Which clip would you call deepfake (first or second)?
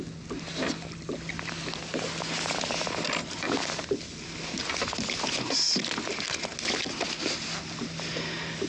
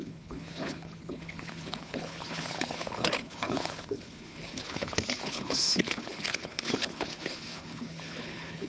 second